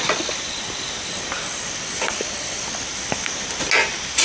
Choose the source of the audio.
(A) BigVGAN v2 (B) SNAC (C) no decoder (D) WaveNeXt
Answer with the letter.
C